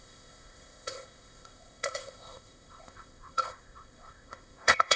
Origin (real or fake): fake